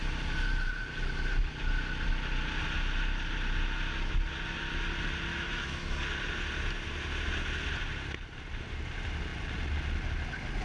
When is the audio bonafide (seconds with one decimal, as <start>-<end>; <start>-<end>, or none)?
0.0-5.3; 5.9-10.6